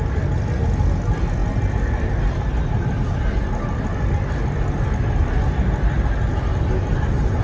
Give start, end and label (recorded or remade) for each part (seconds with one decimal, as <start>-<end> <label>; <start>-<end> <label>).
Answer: 0.0-6.5 recorded; 6.5-7.4 remade